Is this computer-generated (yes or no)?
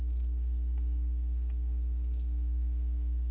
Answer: yes